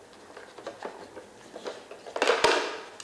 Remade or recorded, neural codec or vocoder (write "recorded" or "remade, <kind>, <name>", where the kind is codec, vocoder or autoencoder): recorded